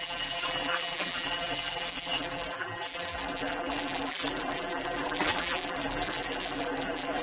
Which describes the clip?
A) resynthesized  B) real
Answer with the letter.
A